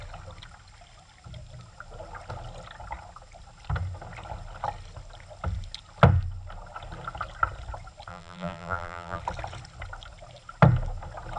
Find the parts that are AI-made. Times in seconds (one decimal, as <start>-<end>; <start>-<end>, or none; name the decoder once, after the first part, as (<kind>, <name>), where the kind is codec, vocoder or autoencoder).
8.1-9.2 (vocoder, BigVGAN v2)